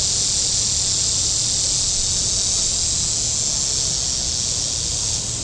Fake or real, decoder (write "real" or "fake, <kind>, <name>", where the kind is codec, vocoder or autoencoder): real